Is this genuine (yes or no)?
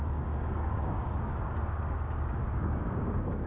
no